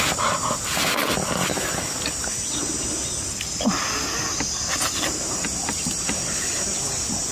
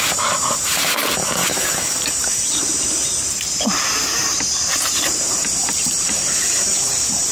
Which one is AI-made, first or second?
second